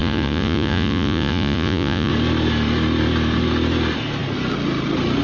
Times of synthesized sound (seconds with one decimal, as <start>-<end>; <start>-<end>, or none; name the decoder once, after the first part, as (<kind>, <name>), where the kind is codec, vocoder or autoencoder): 0.0-2.1 (vocoder, Vocos)

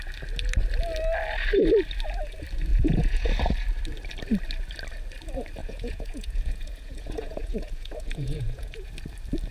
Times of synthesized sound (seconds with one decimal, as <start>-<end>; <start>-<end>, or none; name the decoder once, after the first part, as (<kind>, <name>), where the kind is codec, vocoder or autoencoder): 2.7-3.3 (vocoder, Vocos); 5.6-8.9

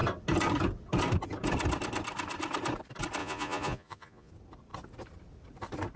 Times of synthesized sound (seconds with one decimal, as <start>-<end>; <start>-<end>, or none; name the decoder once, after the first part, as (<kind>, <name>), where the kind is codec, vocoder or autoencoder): 3.2-4.3 (vocoder, Vocos)

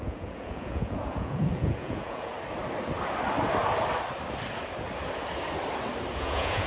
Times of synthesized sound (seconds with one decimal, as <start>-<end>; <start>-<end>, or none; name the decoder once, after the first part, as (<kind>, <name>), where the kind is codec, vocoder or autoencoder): 0.0-2.3 (vocoder, Vocos); 6.1-6.7

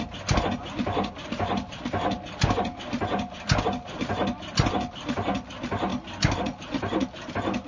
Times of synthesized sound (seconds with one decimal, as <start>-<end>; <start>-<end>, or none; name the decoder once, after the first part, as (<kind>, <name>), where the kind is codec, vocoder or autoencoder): none

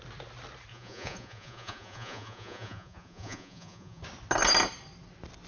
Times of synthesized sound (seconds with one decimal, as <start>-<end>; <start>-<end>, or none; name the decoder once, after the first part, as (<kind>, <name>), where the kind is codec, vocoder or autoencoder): 0.7-4.0 (vocoder, Vocos)

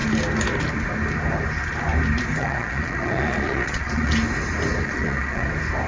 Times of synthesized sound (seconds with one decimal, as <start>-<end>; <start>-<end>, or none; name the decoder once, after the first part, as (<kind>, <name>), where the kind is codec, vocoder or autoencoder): 2.4-4.1 (vocoder, Vocos); 4.8-5.5

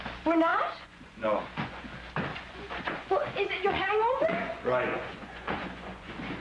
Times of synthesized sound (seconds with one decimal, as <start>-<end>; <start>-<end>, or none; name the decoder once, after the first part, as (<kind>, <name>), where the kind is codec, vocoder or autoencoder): 0.5-1.8 (vocoder, Vocos); 2.3-6.4